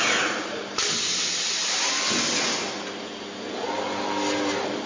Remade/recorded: recorded